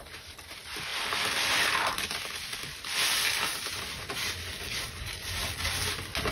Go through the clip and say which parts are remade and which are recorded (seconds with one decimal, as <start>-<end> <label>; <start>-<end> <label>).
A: 0.0-0.9 remade; 0.9-4.7 recorded; 4.7-5.4 remade; 5.4-6.3 recorded

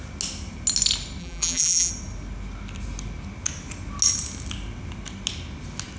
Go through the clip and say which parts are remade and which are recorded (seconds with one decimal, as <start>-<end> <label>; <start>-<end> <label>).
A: 0.0-1.2 recorded; 1.2-1.9 remade; 1.9-6.0 recorded